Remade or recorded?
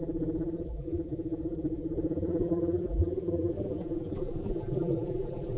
remade